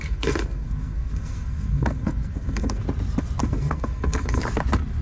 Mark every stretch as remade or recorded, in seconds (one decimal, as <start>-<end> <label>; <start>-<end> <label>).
0.0-2.8 remade; 2.8-3.4 recorded; 3.4-4.4 remade; 4.4-5.0 recorded